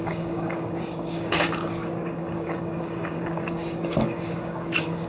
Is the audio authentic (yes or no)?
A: no